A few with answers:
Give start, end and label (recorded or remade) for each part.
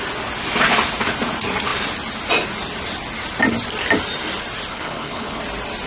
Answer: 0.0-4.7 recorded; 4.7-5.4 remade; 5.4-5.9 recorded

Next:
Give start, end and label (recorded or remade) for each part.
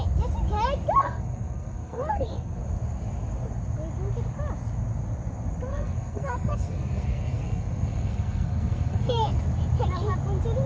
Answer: 0.0-1.0 recorded; 1.0-2.6 remade; 2.6-5.7 recorded; 5.7-9.4 remade; 9.4-10.7 recorded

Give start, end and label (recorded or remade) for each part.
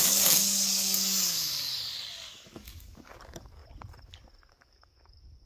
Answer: 0.0-1.7 remade; 1.7-2.3 recorded; 2.3-3.6 remade; 3.6-4.5 recorded; 4.5-5.5 remade